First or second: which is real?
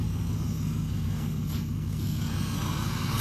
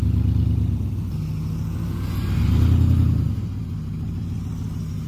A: second